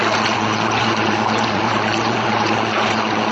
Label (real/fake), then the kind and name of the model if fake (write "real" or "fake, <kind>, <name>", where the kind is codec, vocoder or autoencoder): fake, vocoder, Vocos